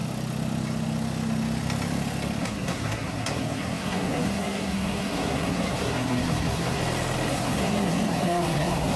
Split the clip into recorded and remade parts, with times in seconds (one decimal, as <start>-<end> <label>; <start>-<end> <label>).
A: 0.0-2.4 recorded; 2.4-6.8 remade; 6.8-7.3 recorded; 7.3-9.0 remade